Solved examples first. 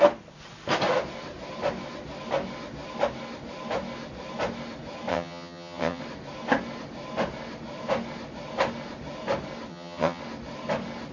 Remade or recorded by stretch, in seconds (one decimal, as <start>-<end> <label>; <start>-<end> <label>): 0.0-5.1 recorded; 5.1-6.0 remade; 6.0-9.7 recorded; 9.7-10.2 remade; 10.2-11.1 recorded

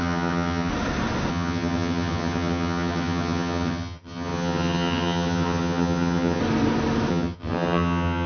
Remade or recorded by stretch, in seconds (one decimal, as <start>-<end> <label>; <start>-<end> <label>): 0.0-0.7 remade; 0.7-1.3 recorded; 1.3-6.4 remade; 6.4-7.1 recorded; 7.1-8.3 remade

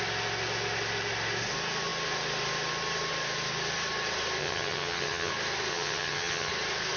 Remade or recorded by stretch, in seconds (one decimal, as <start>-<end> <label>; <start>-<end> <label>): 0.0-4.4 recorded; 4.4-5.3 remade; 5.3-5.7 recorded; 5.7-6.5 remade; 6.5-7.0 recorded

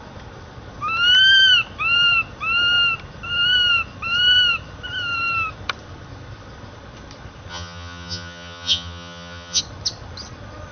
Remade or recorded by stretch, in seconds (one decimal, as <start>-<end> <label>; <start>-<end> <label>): 0.0-7.5 recorded; 7.5-9.6 remade; 9.6-10.7 recorded